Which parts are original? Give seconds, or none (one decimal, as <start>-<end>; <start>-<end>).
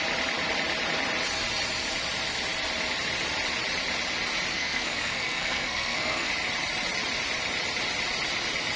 0.0-4.5; 6.3-8.8